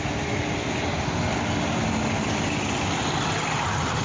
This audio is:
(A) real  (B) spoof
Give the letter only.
A